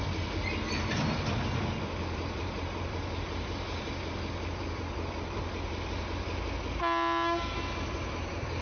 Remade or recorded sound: recorded